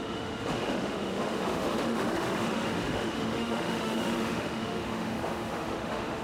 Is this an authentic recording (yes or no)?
no